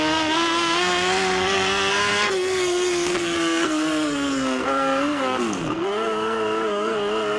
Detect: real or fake fake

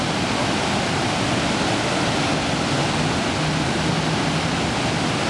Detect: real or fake real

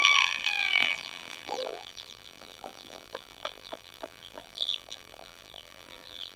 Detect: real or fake fake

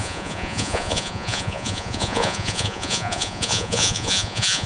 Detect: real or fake fake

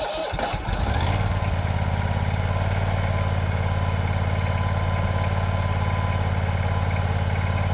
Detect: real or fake real